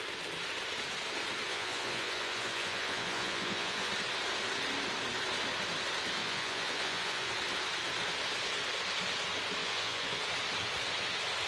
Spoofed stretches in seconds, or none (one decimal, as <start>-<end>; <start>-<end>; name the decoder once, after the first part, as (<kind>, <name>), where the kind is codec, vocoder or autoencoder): 1.5-3.9 (vocoder, Vocos); 6.2-7.3; 9.6-10.2